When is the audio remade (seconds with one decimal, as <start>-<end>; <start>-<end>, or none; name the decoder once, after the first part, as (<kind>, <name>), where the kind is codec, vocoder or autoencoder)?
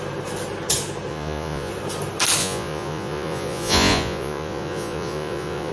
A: 1.1-1.7 (vocoder, Vocos); 2.4-5.7